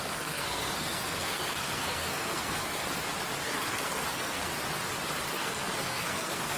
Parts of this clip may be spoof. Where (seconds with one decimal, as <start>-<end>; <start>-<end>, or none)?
0.0-2.8; 3.4-4.5; 5.3-6.6